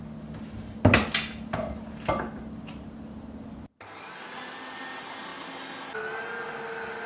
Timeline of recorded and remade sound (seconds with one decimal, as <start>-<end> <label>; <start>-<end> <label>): 0.0-7.1 recorded